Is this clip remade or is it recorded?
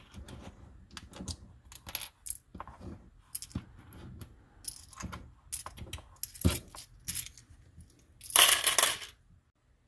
recorded